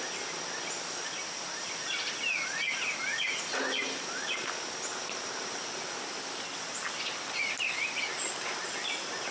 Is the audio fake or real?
real